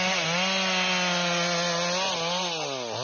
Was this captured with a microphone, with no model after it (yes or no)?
yes